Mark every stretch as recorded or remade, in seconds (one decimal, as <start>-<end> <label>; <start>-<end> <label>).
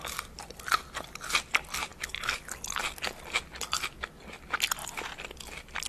0.0-5.9 recorded